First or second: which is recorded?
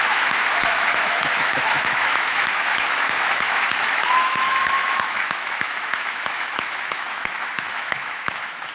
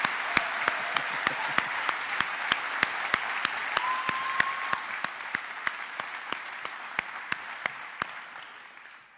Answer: second